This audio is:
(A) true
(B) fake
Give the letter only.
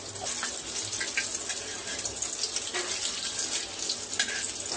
A